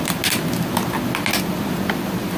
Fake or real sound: real